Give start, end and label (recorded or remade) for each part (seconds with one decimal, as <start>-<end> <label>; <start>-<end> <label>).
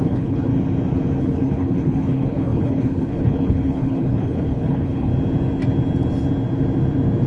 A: 0.0-0.5 remade; 0.5-1.2 recorded; 1.2-5.1 remade; 5.1-7.3 recorded